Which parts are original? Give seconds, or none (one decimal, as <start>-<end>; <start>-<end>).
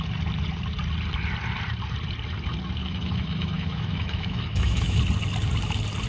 0.0-2.8; 5.0-6.1